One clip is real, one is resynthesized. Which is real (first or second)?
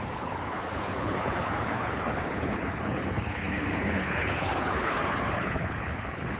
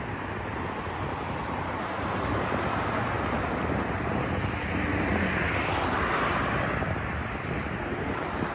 second